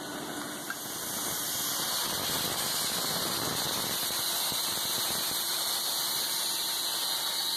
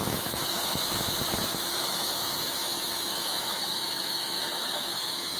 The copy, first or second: second